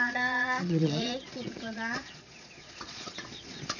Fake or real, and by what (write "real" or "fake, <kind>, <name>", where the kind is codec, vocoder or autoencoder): fake, vocoder, Vocos